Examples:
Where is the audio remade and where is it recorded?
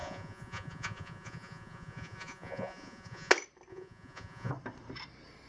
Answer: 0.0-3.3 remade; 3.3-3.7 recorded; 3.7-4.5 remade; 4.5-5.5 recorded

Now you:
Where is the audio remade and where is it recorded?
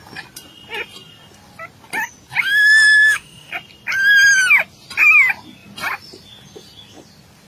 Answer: 0.0-2.4 recorded; 2.4-3.5 remade; 3.5-7.5 recorded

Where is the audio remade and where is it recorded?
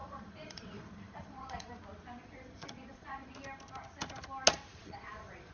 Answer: 0.0-1.7 remade; 1.7-2.2 recorded; 2.2-3.3 remade; 3.3-4.7 recorded; 4.7-5.5 remade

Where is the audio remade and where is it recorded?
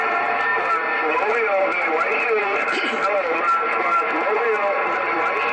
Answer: 0.0-5.5 remade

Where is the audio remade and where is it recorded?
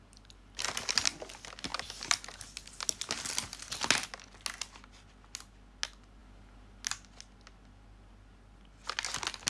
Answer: 0.0-9.5 recorded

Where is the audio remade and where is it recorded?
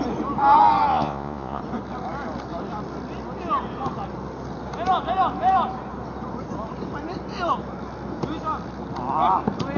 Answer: 0.0-0.9 recorded; 0.9-1.6 remade; 1.6-9.8 recorded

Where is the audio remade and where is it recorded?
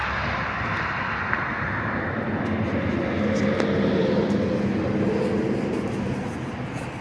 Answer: 0.0-7.0 recorded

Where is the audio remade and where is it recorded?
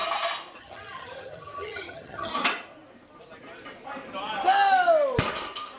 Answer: 0.0-0.6 recorded; 0.6-2.3 remade; 2.3-5.8 recorded